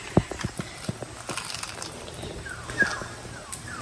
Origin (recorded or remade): recorded